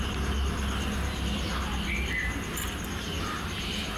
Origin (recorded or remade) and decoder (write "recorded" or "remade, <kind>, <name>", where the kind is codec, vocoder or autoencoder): recorded